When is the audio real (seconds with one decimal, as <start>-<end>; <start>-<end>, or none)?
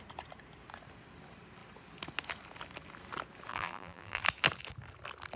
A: 0.0-3.5; 4.2-5.4